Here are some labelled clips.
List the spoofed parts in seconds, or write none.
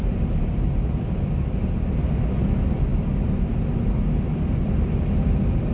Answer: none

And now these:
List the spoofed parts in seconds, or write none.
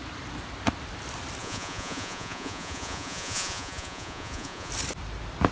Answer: 1.4-4.7 (vocoder, Vocos)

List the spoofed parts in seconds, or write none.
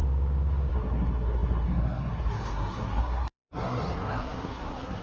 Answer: 0.7-5.0 (codec, SNAC)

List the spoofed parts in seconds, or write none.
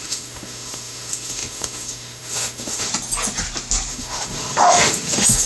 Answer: 0.0-2.9 (autoencoder, DAC-VAE); 3.9-5.5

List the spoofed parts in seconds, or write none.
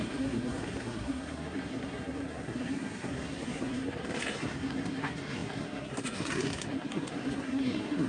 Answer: 0.0-8.1 (codec, SNAC)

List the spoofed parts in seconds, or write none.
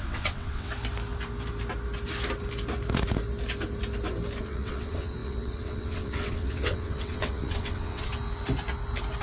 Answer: 0.0-0.7 (vocoder, WaveNeXt); 4.4-8.1